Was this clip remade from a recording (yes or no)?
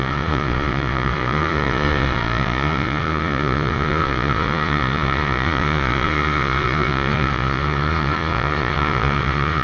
yes